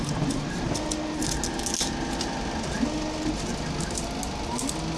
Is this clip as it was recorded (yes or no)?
yes